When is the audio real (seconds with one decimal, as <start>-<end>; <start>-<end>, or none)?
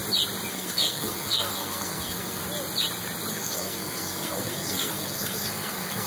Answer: 0.0-0.5; 2.4-3.3